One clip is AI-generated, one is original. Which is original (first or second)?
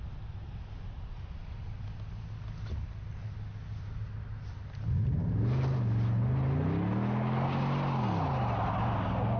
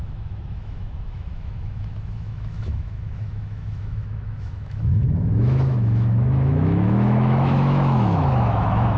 first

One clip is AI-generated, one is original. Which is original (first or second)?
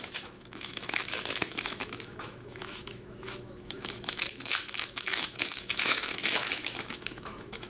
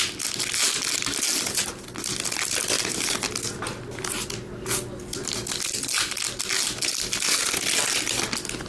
second